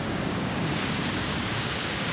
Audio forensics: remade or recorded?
remade